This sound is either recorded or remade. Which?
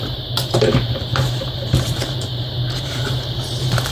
remade